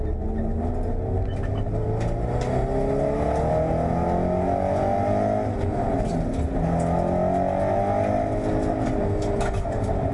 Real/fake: real